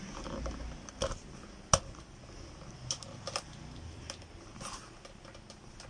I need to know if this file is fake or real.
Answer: real